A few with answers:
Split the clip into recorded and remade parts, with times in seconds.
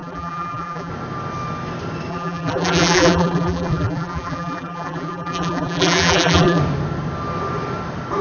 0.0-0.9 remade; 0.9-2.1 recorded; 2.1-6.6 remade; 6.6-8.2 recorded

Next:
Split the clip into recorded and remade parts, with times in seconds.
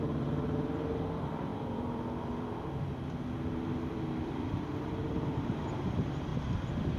0.0-6.3 remade; 6.3-7.0 recorded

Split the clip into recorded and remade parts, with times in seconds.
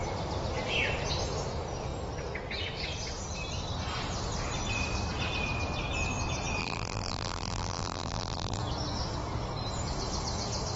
0.0-6.6 recorded; 6.6-8.6 remade; 8.6-10.8 recorded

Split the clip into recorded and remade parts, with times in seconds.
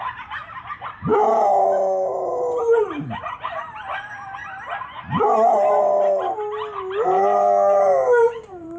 0.0-1.1 remade; 1.1-1.6 recorded; 1.6-4.4 remade; 4.4-8.4 recorded; 8.4-8.8 remade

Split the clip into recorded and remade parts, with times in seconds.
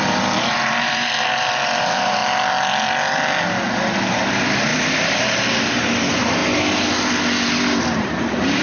0.0-2.2 remade; 2.2-3.8 recorded; 3.8-6.4 remade; 6.4-8.0 recorded; 8.0-8.6 remade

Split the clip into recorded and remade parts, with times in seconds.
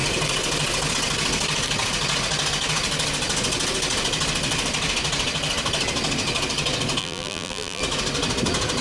0.0-7.0 recorded; 7.0-7.8 remade; 7.8-8.8 recorded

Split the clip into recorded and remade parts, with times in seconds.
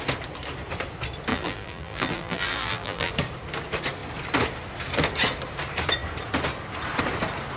0.0-1.3 recorded; 1.3-3.1 remade; 3.1-7.6 recorded